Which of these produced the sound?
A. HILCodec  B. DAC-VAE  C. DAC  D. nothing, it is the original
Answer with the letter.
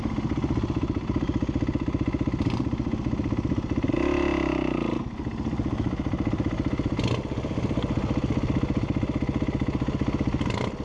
D